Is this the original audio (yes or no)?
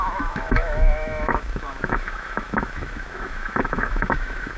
no